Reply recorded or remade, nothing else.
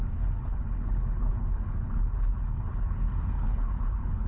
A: remade